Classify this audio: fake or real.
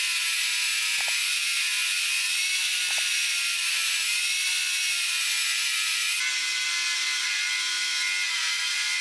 real